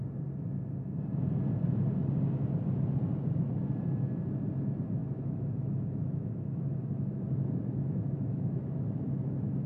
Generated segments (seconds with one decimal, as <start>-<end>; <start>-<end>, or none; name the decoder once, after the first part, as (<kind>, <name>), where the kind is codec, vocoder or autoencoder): 5.0-9.7 (autoencoder, DAC-VAE)